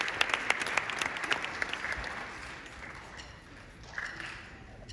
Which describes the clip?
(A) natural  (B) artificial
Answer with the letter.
A